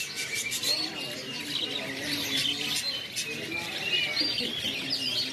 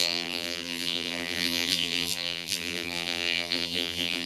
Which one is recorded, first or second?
first